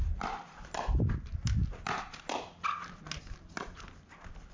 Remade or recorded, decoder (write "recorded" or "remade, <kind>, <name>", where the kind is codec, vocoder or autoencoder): recorded